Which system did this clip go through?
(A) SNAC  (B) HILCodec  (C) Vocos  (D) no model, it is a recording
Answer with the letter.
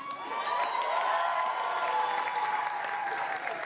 D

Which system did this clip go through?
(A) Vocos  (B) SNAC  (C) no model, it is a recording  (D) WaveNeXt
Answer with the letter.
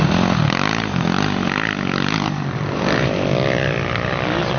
C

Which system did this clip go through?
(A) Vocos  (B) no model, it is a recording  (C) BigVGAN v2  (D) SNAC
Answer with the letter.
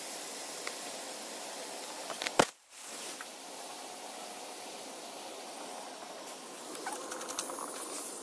B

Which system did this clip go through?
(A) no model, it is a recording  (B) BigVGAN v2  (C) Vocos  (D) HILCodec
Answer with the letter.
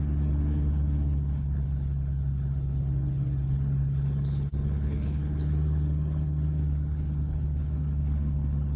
D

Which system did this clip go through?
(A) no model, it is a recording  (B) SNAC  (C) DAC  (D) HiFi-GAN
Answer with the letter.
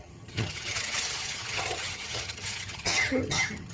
D